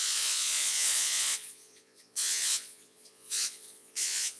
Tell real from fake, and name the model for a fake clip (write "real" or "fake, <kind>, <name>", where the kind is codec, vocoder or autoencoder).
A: fake, vocoder, Vocos